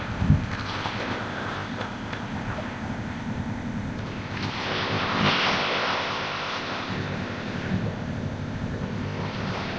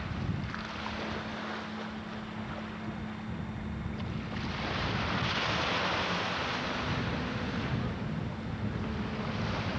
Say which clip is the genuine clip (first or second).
second